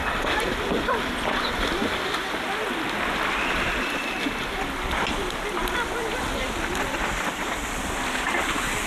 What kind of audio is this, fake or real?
real